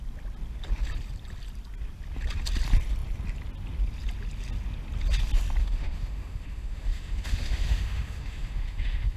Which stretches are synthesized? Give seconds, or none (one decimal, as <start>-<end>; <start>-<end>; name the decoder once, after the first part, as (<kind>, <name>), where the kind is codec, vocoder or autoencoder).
5.6-9.2 (autoencoder, DAC-VAE)